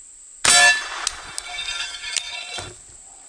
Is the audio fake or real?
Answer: real